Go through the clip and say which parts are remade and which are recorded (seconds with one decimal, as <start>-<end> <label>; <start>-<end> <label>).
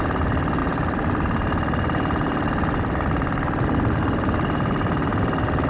0.0-5.7 recorded